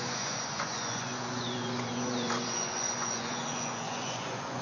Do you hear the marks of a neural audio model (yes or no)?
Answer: yes